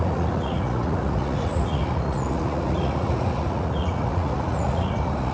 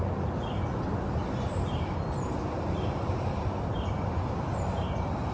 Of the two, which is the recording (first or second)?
second